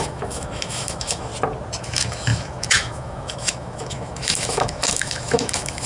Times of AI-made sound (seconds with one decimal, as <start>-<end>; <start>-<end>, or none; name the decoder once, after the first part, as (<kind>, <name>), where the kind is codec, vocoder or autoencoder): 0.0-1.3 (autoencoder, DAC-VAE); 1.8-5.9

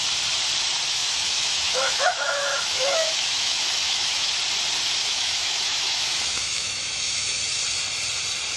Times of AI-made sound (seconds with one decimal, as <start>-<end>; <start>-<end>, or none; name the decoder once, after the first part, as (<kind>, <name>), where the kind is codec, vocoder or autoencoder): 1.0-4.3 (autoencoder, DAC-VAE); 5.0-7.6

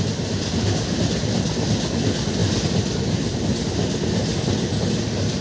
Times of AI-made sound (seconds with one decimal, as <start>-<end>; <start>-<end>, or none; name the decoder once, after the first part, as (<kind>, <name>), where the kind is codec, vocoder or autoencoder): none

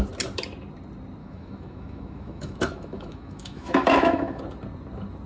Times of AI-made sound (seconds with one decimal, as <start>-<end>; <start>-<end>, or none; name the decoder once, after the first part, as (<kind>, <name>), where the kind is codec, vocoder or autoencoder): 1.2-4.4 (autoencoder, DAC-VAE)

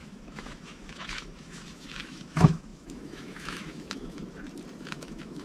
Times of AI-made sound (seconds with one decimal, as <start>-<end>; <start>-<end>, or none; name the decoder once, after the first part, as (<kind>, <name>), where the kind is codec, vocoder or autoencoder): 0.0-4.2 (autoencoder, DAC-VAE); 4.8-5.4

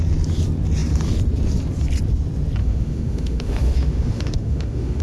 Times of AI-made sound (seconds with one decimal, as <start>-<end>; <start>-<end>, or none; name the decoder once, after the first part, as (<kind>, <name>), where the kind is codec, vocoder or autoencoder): 2.6-5.0 (autoencoder, DAC-VAE)